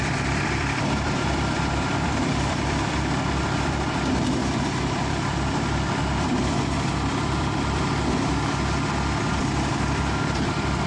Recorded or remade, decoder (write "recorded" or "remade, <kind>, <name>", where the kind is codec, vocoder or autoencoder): remade, vocoder, BigVGAN v2